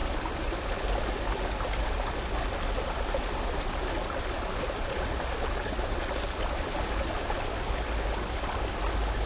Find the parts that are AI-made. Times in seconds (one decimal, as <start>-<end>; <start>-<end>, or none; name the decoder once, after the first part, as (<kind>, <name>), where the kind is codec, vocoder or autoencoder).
none

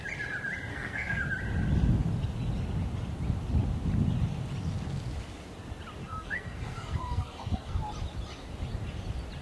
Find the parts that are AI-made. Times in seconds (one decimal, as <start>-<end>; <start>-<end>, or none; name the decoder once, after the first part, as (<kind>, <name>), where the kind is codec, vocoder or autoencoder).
0.7-1.2 (codec, SNAC); 6.0-7.8

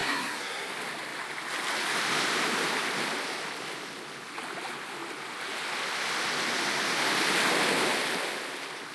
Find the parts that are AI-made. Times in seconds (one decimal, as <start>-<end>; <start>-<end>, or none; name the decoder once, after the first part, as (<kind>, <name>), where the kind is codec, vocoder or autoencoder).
0.0-0.7 (codec, SNAC)

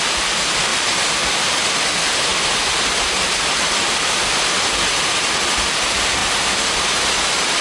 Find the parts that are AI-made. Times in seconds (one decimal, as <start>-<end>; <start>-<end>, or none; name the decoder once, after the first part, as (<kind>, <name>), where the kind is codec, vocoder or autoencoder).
none

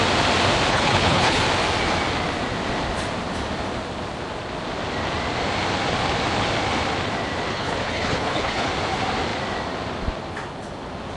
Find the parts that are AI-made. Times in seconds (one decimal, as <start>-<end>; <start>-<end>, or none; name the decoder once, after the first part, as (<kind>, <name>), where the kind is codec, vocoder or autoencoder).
0.7-1.4 (codec, HILCodec); 7.5-8.7

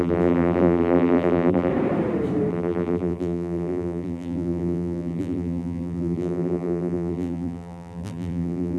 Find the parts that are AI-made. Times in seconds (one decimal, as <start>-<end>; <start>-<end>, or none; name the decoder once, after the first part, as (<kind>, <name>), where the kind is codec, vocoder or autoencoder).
0.0-1.7 (vocoder, BigVGAN v2); 2.5-8.8